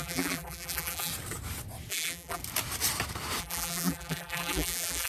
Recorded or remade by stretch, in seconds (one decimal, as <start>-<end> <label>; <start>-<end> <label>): 0.0-1.1 remade; 1.1-1.9 recorded; 1.9-2.4 remade; 2.4-3.4 recorded; 3.4-5.1 remade